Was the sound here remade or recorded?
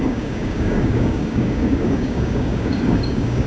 remade